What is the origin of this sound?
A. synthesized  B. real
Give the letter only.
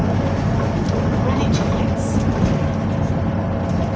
B